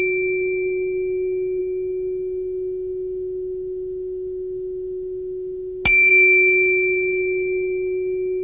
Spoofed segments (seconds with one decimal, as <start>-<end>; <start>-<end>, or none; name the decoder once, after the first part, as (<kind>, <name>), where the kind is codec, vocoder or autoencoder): none